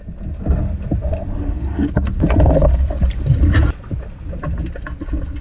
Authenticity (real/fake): real